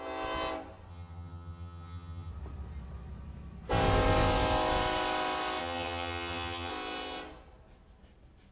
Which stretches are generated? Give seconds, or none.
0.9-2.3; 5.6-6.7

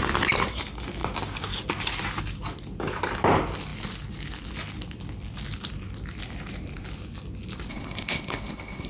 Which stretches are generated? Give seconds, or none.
7.7-8.9

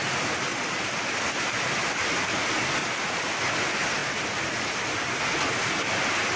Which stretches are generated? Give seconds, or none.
0.5-1.2; 2.8-3.4; 4.0-5.2

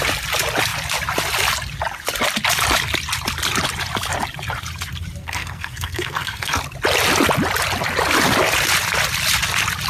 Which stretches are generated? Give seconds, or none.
5.2-6.6

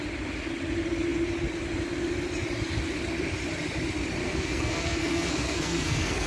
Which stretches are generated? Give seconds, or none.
4.2-6.3

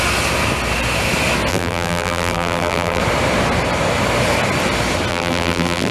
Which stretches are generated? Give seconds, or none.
1.5-3.0; 5.1-5.9

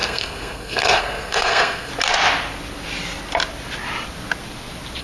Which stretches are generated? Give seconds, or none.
0.0-1.9

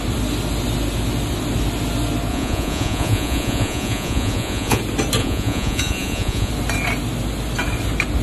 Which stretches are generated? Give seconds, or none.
2.3-4.8; 5.2-6.5